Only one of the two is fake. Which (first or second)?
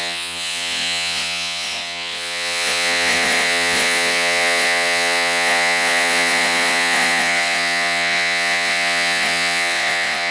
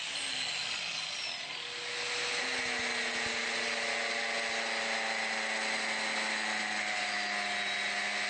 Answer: first